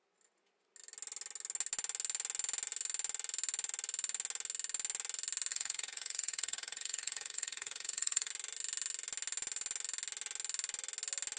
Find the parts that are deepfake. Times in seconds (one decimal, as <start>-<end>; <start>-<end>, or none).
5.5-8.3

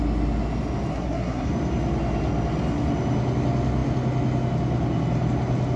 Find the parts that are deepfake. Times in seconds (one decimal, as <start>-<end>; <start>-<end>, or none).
0.9-1.5

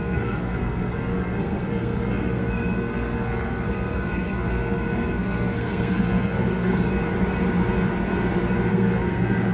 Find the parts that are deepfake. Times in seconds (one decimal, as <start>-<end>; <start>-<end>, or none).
0.0-6.9; 8.7-9.5

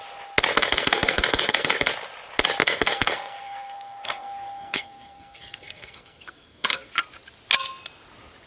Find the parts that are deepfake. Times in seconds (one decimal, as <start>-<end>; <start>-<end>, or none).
0.5-1.9; 2.6-6.9

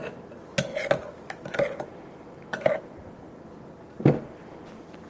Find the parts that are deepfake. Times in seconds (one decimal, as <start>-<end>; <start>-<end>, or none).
none

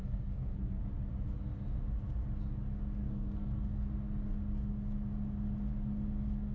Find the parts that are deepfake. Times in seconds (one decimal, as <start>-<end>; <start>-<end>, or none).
0.0-0.8; 3.0-3.9

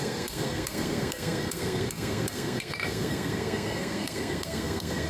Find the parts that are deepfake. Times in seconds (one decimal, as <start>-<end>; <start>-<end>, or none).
0.0-5.1

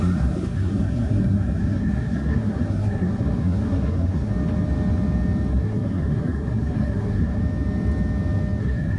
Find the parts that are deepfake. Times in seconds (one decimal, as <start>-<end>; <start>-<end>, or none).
0.0-4.3; 5.5-7.4; 8.6-9.0